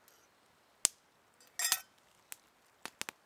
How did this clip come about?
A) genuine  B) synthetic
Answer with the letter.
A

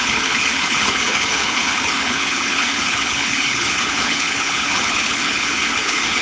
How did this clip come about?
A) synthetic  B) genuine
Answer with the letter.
A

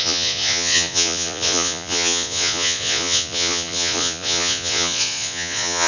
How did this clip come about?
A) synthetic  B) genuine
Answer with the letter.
A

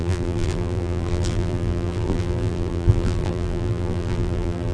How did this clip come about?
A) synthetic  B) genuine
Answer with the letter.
A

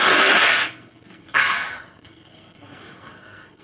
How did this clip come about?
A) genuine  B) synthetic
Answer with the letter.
B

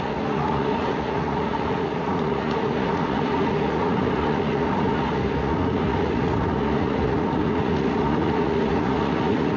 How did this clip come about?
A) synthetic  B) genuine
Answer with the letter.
A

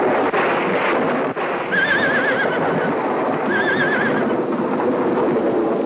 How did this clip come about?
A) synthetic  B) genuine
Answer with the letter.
B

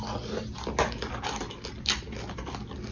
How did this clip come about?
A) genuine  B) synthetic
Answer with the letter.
A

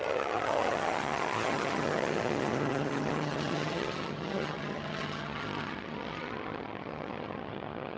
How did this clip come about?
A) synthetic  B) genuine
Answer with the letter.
A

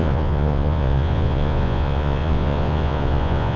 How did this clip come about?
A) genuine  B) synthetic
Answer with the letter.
B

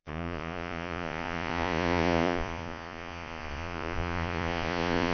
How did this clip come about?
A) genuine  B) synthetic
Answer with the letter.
B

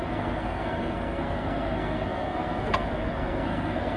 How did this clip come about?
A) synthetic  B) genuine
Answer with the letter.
A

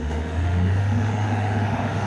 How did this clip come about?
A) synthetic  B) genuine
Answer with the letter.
A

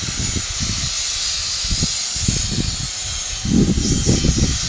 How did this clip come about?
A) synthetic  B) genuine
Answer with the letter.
B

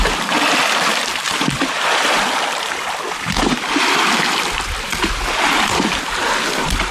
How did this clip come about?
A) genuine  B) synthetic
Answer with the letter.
A